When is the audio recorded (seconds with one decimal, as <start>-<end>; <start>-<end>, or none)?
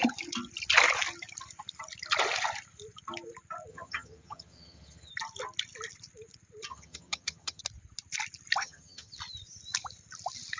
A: 0.0-3.7; 5.1-6.7; 7.6-8.6; 9.1-10.6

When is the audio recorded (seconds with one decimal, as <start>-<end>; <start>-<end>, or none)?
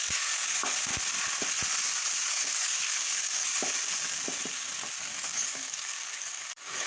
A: 0.9-2.3; 3.5-5.0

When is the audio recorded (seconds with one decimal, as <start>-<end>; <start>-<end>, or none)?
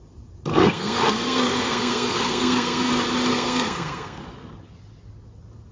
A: 0.0-0.5; 2.9-3.3; 4.2-5.7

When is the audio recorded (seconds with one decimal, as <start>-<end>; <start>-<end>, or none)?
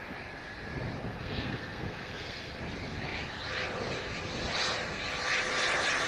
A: 0.0-1.1; 2.6-6.1